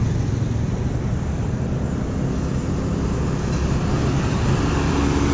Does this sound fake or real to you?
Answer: fake